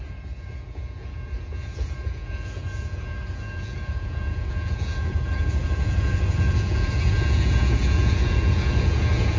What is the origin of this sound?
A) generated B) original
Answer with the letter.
A